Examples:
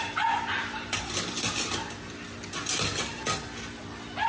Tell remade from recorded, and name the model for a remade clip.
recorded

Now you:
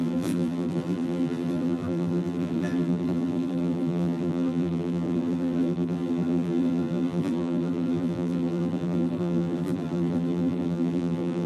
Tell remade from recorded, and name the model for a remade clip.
remade, vocoder, BigVGAN v2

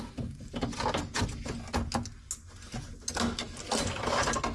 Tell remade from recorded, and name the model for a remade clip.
recorded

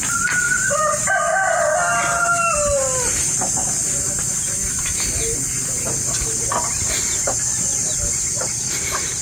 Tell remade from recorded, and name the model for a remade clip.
recorded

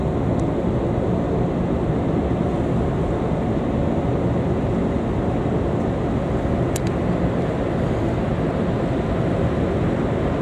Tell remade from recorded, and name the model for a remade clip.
recorded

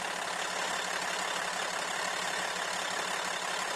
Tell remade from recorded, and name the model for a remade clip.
recorded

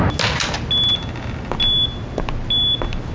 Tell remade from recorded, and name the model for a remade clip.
recorded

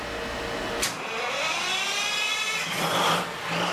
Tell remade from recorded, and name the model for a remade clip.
recorded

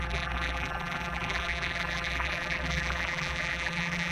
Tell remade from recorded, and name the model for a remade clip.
remade, vocoder, BigVGAN v2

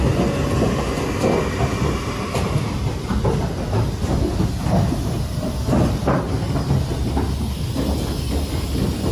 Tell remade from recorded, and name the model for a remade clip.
recorded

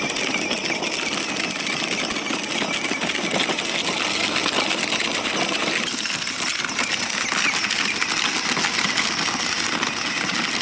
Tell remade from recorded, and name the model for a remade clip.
recorded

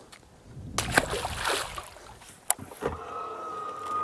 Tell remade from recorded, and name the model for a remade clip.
recorded